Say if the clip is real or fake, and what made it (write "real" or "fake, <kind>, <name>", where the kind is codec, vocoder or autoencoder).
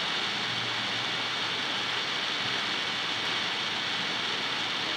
real